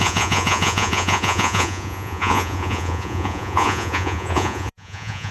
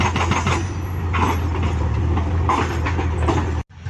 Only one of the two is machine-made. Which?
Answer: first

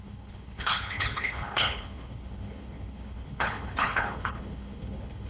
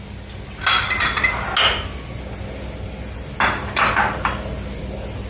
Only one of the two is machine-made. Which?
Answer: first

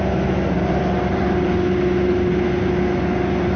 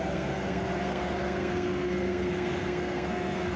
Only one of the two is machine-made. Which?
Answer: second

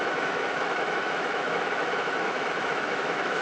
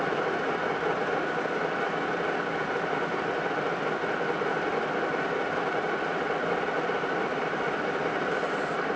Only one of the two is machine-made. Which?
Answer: first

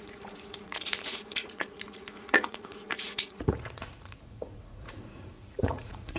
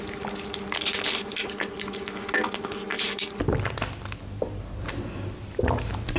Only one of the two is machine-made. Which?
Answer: first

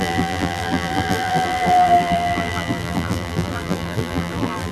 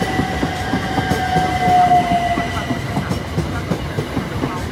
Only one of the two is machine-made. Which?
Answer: first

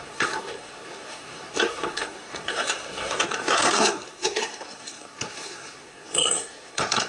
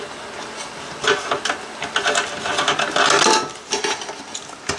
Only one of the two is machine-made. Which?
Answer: first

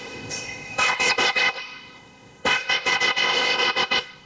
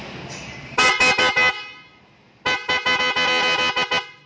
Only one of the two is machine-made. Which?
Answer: first